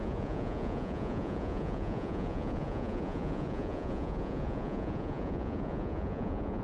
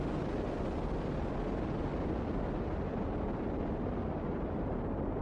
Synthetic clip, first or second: first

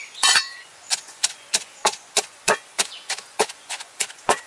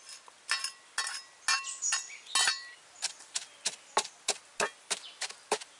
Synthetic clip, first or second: first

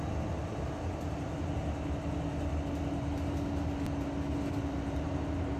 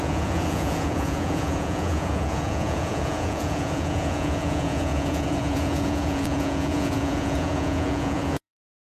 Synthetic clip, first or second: second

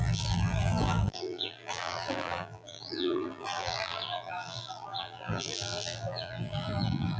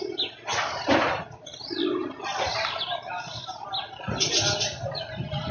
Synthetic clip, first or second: first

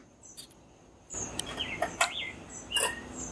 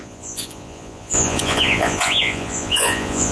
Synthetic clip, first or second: second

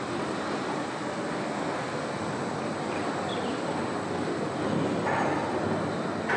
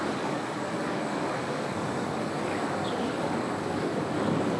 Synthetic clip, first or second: second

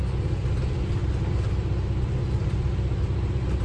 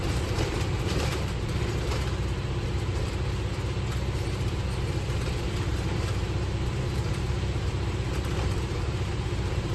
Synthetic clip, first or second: second